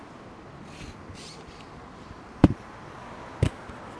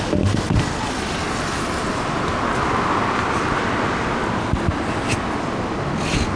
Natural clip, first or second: second